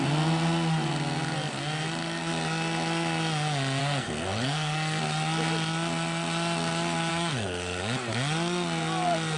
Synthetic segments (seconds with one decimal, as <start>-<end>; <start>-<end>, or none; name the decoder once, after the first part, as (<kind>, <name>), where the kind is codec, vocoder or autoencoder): 3.8-5.0 (codec, SNAC); 7.1-7.8